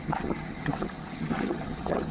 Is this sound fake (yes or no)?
yes